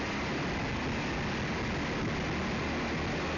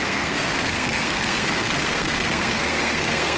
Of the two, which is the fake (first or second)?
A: second